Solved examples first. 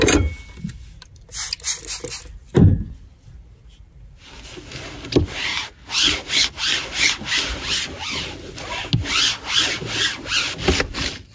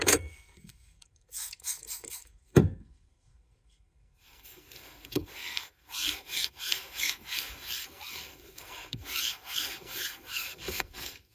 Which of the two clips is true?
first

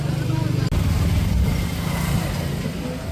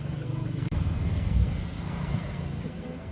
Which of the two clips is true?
first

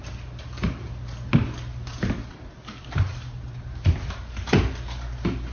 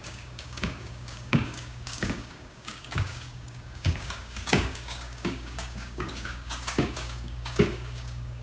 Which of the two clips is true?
first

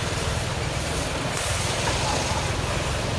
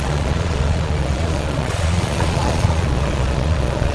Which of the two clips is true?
first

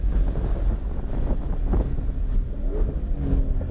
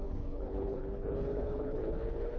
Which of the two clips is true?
first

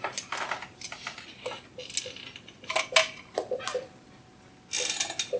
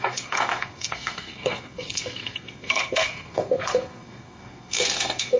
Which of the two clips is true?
first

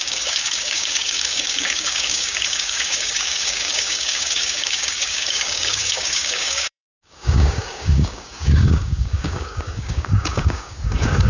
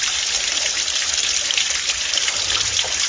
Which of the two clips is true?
second